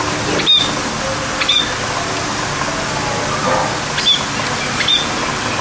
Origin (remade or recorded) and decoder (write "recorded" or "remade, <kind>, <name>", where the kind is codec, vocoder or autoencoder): recorded